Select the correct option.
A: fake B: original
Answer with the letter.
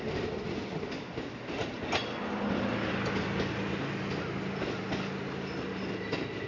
B